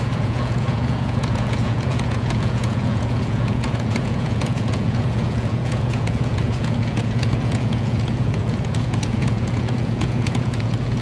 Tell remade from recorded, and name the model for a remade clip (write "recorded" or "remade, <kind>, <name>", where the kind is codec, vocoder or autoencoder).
remade, vocoder, Vocos